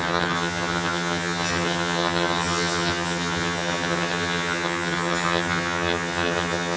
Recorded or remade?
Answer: remade